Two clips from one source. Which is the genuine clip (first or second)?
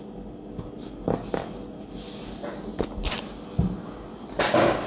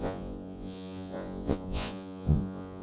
first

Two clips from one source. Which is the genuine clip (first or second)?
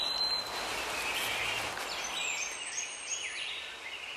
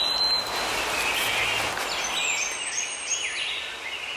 second